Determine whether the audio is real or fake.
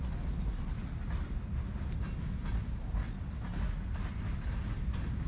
real